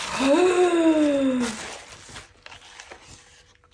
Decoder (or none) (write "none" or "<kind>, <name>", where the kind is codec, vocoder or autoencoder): none